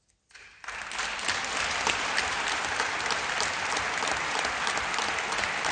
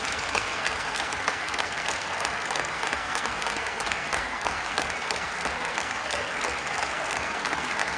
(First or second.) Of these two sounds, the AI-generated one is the second